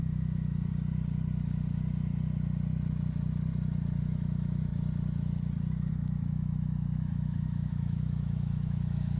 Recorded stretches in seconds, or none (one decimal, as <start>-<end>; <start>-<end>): 0.7-4.0; 4.7-5.9

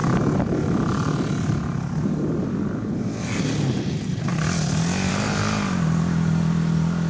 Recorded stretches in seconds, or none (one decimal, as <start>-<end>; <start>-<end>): 0.0-7.1

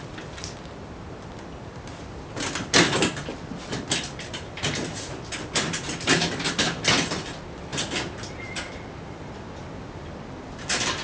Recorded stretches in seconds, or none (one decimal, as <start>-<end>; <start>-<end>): 0.0-11.0

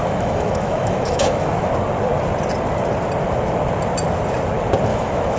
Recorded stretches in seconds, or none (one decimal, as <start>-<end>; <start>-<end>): 1.7-4.9